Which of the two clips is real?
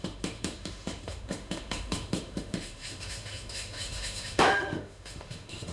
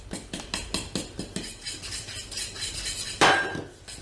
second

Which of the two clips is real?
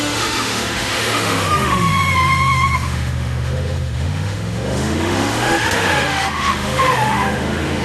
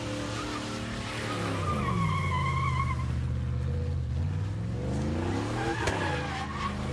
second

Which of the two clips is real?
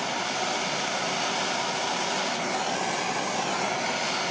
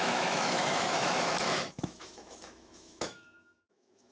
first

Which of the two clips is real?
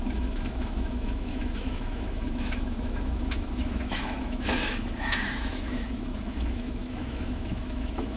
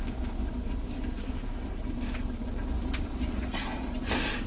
second